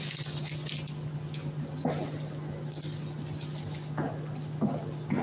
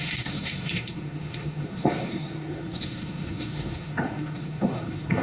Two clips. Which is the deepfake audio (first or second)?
second